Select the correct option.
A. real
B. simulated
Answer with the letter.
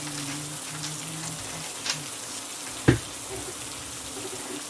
A